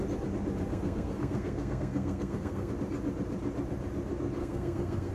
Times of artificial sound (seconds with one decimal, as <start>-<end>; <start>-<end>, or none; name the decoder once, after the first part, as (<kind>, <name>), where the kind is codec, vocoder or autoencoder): 0.7-2.7 (codec, SNAC); 4.4-5.1